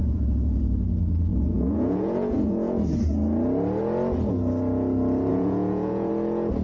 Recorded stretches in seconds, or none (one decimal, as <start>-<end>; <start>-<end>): 0.6-1.3; 2.8-5.3; 6.1-6.6